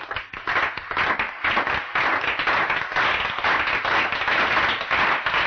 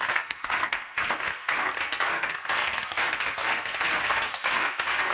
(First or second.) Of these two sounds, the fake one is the second